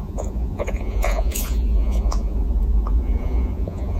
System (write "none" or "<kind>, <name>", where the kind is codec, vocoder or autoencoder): vocoder, Vocos